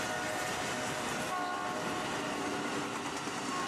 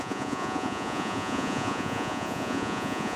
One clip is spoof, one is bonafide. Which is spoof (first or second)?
second